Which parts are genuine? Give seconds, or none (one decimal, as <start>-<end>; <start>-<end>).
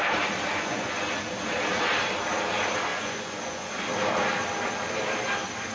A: 0.0-0.5; 1.1-2.9; 3.7-5.7